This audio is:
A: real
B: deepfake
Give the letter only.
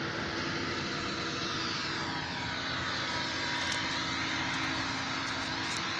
A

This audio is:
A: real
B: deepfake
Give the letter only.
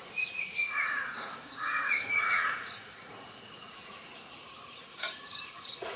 B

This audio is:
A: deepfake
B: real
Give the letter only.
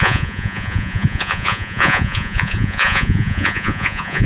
A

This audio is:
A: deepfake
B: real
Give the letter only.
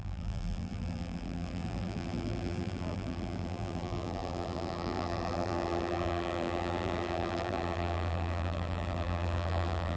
A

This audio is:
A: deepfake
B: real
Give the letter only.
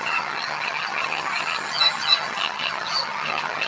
A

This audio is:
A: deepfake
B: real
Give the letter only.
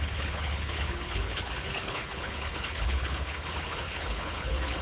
A